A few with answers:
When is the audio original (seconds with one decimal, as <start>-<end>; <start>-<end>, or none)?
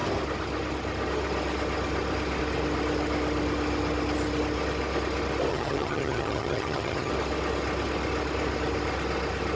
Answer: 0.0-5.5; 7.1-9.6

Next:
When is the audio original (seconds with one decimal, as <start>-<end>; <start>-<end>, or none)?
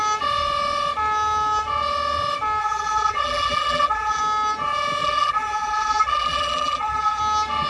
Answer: 0.0-2.6; 4.2-5.0; 7.2-7.7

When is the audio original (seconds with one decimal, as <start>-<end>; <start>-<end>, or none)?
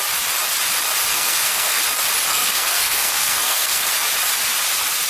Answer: 0.0-1.1; 1.8-2.3; 3.9-5.1